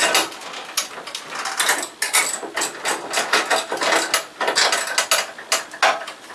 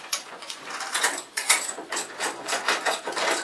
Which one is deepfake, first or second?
second